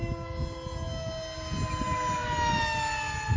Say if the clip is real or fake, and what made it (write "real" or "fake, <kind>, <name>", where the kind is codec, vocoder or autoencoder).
real